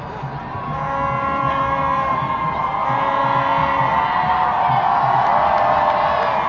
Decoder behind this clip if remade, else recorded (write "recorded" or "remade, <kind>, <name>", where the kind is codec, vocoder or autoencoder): recorded